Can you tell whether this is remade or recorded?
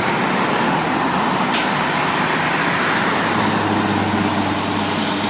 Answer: recorded